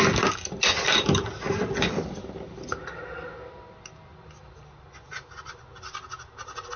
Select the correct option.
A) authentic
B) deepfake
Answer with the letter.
A